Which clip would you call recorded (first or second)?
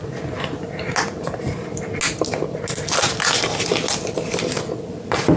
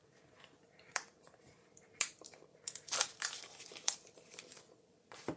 first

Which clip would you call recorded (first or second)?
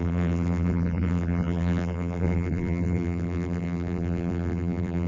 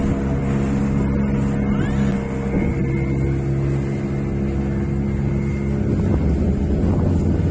second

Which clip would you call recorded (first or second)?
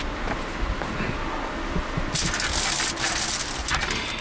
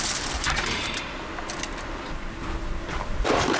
first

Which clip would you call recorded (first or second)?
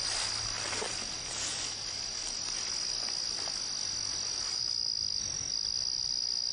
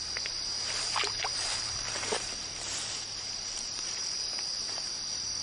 first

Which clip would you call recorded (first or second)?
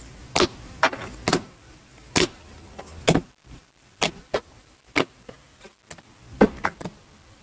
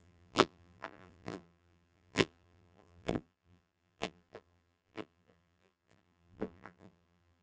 first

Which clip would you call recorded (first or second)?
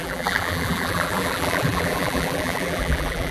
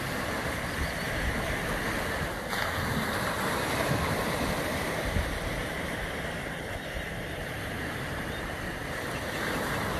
second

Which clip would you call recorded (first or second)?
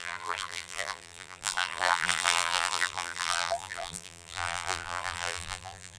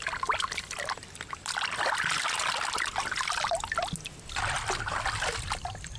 second